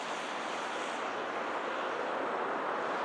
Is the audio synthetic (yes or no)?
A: no